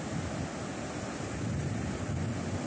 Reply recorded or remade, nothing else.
recorded